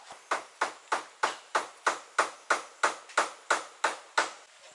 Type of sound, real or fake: real